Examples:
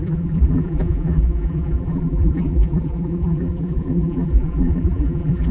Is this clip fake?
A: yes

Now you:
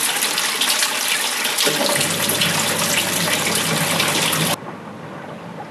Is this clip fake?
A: no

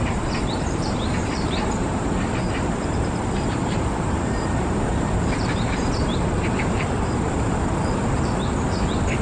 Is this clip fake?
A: yes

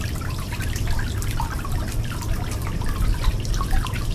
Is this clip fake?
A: yes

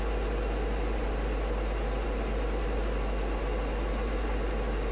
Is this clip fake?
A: no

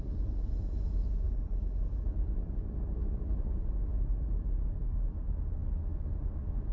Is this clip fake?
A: no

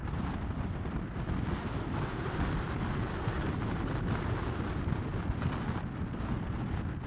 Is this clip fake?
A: no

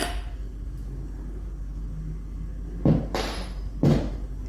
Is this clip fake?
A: no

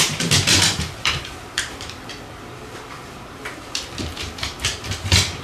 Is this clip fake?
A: yes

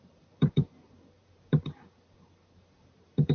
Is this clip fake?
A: yes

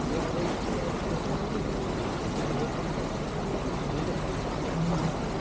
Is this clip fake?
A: no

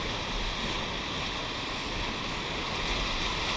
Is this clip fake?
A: no